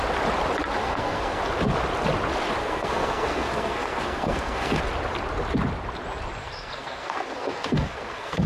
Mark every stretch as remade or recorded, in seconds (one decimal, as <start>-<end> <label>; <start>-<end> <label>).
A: 0.0-0.8 recorded; 0.8-1.4 remade; 1.4-2.6 recorded; 2.6-4.8 remade; 4.8-6.4 recorded; 6.4-8.5 remade